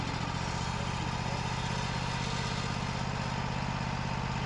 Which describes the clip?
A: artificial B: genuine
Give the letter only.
B